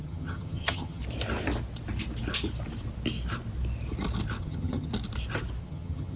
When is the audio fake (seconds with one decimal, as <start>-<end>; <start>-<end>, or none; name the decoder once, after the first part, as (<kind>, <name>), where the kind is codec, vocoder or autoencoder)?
0.0-1.0 (vocoder, HiFi-GAN); 4.4-4.9; 5.6-6.2